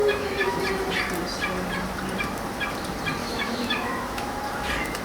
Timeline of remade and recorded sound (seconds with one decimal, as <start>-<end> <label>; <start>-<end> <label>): 0.0-0.6 remade; 0.6-3.2 recorded; 3.2-4.4 remade; 4.4-5.0 recorded